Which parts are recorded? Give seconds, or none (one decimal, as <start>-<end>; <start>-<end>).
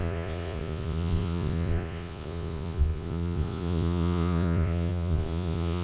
none